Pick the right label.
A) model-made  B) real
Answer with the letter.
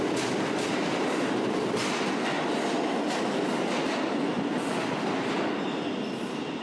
B